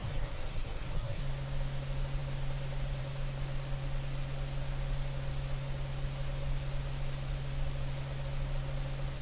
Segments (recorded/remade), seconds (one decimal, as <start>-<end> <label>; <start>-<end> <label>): 0.0-1.2 remade; 1.2-9.2 recorded